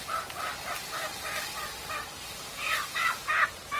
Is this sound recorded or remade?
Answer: recorded